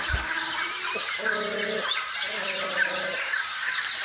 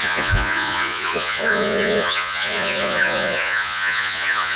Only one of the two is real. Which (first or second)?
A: first